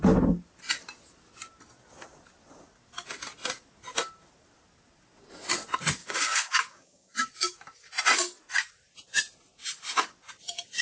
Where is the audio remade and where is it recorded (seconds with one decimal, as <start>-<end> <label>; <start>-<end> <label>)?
0.0-6.0 recorded; 6.0-7.2 remade; 7.2-10.8 recorded